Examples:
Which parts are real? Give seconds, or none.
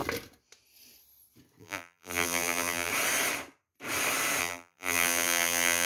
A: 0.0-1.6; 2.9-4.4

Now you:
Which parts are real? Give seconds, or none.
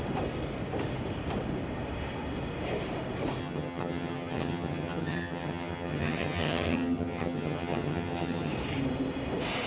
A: 0.0-3.4; 8.5-9.7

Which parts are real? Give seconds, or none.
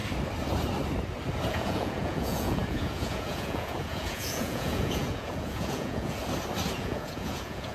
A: 0.0-1.5; 6.2-6.7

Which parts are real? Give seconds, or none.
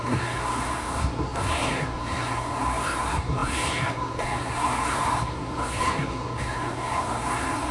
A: none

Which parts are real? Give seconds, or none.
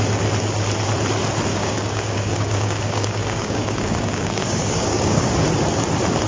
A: 0.0-1.5; 5.3-6.3